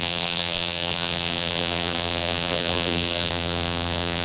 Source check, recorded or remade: remade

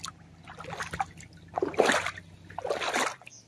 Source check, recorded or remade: recorded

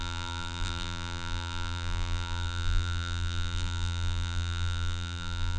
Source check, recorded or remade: remade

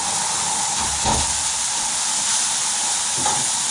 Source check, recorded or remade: recorded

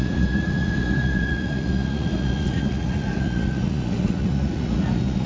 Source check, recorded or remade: remade